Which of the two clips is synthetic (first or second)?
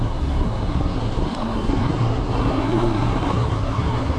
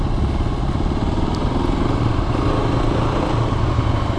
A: first